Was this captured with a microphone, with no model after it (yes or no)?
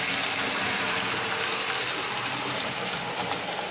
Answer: yes